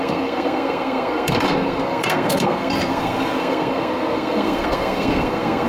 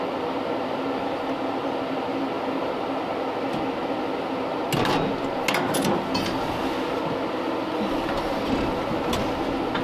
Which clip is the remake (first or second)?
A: first